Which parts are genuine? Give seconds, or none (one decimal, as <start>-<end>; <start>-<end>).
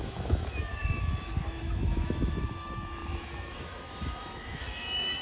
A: none